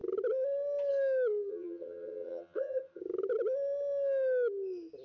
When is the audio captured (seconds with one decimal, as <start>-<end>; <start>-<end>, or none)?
0.0-1.5; 3.0-5.0